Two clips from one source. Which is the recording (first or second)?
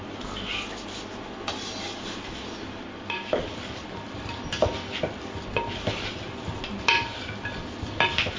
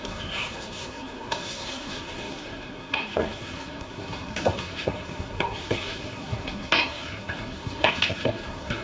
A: first